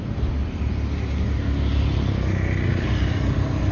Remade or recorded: recorded